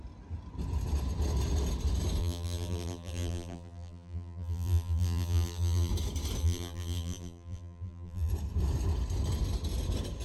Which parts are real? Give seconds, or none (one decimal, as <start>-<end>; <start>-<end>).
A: 0.0-2.2; 5.9-6.4; 8.3-10.2